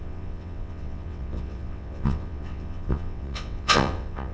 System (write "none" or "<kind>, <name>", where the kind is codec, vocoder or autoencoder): vocoder, WaveNeXt